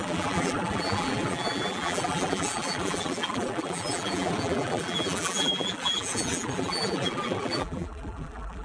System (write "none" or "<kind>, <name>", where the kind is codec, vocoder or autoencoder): vocoder, BigVGAN v2